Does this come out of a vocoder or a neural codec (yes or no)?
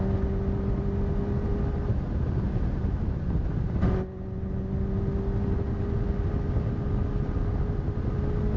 no